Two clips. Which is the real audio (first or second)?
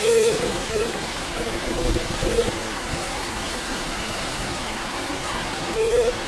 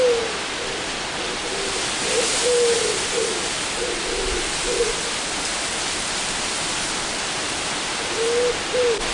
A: second